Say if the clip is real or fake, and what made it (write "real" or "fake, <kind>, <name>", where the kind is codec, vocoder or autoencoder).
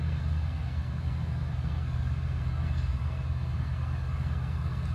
fake, codec, SNAC